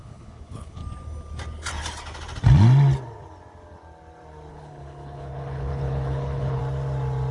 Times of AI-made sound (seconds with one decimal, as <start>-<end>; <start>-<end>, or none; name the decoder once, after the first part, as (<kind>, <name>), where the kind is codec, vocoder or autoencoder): 0.0-0.8 (codec, HILCodec); 4.5-6.6

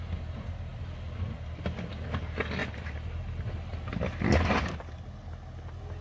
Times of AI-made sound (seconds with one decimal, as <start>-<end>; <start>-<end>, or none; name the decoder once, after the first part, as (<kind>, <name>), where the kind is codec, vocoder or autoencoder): 0.7-1.9 (vocoder, BigVGAN v2)

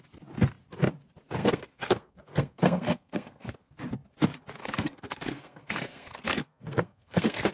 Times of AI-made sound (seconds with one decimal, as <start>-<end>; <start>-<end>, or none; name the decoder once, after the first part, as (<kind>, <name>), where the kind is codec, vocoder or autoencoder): 1.4-3.8 (codec, SNAC); 4.6-7.5

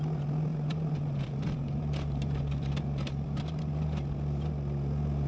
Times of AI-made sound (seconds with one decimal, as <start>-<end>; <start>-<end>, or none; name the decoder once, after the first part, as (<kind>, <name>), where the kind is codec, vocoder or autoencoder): 0.5-3.7 (vocoder, BigVGAN v2)

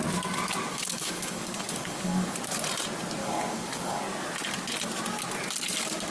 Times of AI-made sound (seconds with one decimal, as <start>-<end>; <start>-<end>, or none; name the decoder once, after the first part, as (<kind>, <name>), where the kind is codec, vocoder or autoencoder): 0.7-2.3 (codec, DAC); 3.2-4.0